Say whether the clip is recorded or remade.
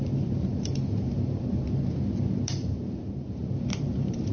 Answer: remade